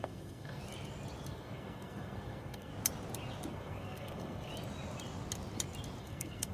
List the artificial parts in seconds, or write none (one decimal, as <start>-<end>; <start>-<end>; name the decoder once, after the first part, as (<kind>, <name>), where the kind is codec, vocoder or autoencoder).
0.0-0.6 (codec, SNAC); 1.3-2.7; 3.5-4.5; 6.0-6.5

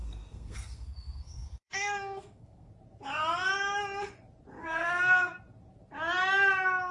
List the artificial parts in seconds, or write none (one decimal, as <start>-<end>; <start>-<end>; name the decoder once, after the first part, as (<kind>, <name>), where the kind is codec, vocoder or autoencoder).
0.0-2.7 (codec, SNAC); 4.6-5.4

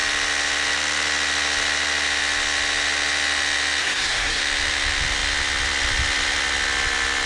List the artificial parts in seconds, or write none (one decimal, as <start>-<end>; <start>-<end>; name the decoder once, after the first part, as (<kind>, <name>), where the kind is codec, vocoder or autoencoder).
3.8-4.4 (codec, SNAC)

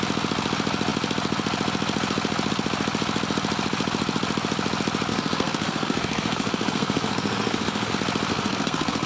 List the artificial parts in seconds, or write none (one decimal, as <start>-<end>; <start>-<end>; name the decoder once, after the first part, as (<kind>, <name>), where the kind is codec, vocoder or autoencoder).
5.1-7.9 (codec, SNAC); 8.3-9.1

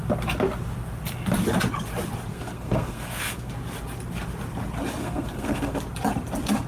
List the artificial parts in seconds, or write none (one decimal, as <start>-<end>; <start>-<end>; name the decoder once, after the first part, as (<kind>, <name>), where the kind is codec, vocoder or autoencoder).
2.3-3.5 (codec, SNAC); 5.0-5.8

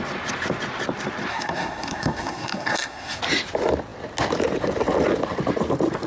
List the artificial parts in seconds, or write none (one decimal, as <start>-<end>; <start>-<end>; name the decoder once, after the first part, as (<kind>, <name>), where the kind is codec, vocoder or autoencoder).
1.3-3.2 (codec, SNAC)

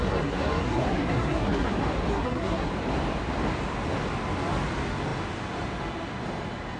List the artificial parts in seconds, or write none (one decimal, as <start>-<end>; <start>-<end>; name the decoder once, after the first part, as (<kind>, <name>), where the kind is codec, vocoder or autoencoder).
0.0-1.7 (codec, SNAC); 2.1-2.7

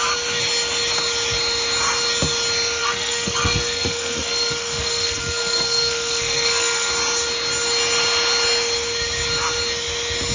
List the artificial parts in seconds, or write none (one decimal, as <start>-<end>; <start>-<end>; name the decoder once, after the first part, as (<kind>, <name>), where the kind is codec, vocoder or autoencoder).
2.8-6.9 (codec, SNAC)